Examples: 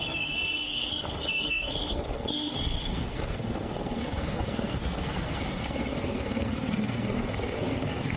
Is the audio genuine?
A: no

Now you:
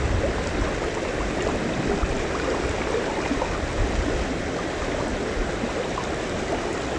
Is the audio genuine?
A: yes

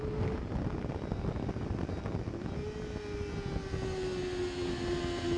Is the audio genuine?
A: yes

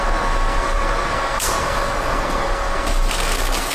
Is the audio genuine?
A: no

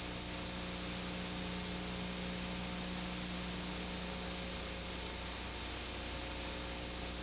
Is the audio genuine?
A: yes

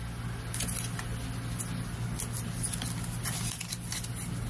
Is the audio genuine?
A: yes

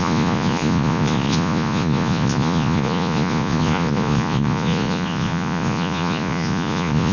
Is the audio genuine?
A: no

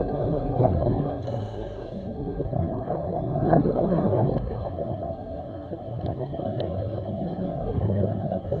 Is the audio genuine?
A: no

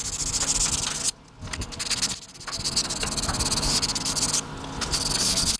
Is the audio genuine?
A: yes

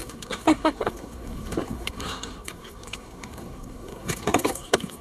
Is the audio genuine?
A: no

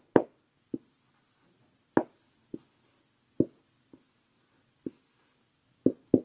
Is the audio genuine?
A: yes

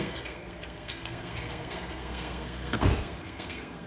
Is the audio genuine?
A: no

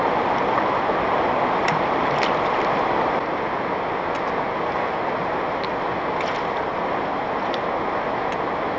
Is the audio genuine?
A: yes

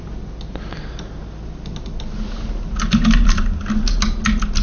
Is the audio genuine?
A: yes